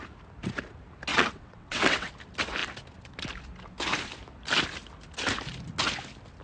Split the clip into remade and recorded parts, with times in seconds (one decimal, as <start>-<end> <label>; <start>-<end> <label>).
0.0-1.1 recorded; 1.1-2.1 remade; 2.1-6.4 recorded